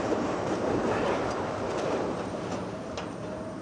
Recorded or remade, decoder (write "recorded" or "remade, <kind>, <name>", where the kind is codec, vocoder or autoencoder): remade, vocoder, BigVGAN v2